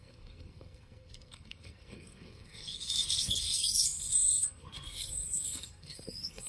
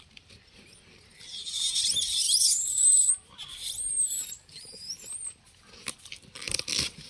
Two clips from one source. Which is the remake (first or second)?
first